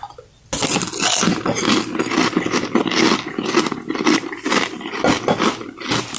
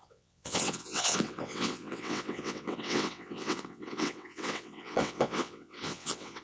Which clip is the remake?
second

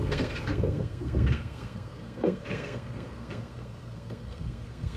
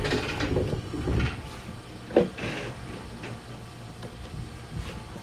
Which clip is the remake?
first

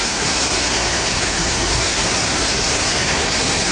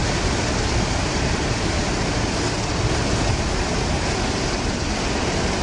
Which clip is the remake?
first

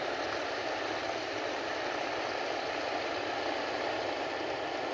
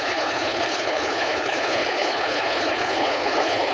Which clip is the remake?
second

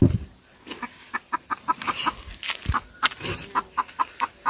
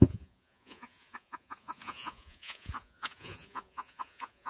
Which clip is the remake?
second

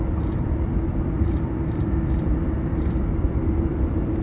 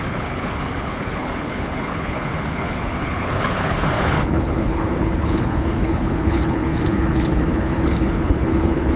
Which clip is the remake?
second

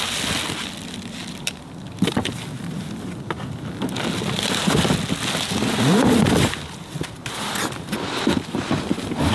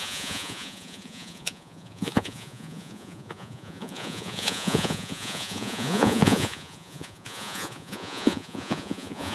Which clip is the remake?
second